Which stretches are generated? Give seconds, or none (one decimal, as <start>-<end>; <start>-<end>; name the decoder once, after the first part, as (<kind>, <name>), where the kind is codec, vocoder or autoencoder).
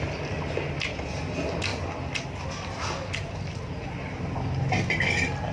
none